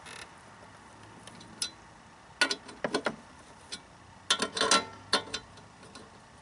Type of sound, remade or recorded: recorded